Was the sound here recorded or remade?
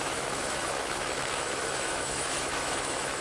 remade